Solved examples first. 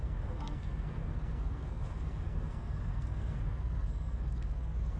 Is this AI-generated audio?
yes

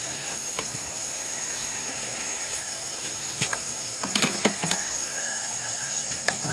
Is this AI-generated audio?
yes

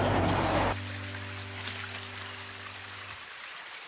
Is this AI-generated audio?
no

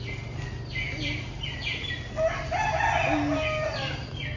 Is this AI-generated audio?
no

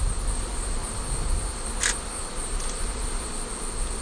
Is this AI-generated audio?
no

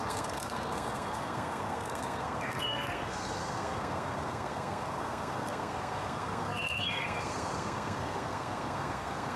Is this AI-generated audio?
yes